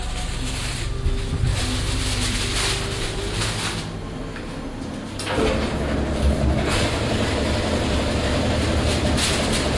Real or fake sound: real